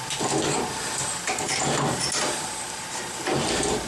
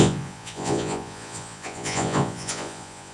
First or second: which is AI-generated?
second